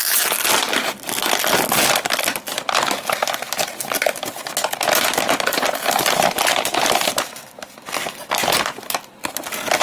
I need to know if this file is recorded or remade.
recorded